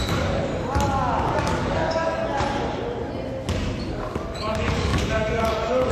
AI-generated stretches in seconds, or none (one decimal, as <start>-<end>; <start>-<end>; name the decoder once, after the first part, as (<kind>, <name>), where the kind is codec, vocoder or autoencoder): 0.0-0.5 (codec, DAC); 1.4-2.2; 3.9-5.9

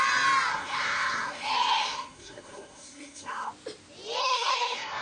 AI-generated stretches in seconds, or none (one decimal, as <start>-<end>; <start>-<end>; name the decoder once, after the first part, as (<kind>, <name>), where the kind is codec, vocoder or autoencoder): 0.5-3.5 (codec, SNAC); 4.2-5.0